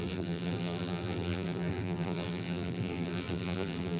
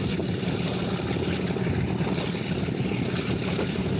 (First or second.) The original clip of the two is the second